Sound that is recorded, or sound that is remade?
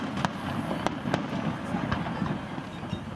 recorded